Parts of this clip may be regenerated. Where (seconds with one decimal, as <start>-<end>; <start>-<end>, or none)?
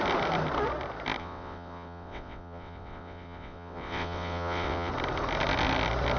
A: 1.2-4.9